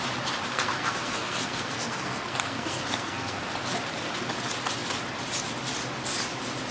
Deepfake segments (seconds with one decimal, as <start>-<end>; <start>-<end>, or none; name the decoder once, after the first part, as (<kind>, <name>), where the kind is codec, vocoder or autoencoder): 0.5-3.4 (codec, SNAC)